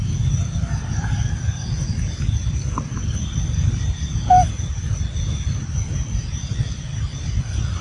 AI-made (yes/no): no